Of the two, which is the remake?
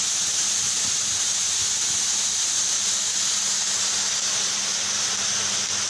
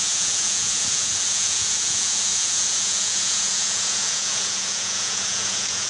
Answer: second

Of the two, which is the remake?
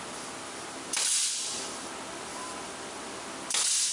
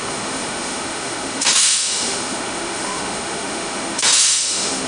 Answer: second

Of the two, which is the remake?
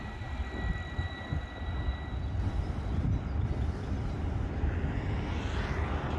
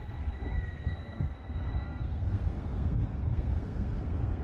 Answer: second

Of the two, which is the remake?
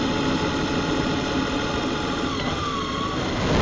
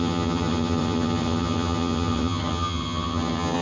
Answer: second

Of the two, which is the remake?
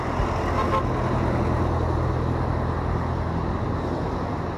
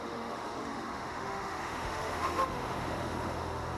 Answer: second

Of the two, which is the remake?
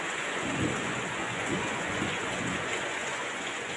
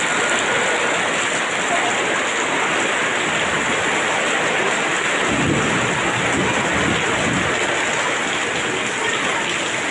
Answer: first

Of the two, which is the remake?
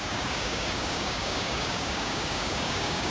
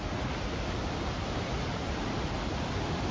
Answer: first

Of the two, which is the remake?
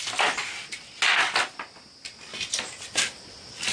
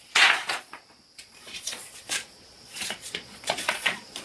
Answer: second